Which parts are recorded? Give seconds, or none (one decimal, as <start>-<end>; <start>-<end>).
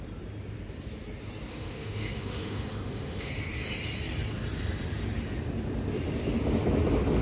0.0-1.5; 3.3-7.2